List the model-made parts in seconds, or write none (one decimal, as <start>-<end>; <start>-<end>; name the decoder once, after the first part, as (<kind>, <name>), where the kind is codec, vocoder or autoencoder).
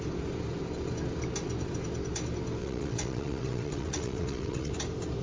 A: 2.6-4.7 (vocoder, WaveNeXt)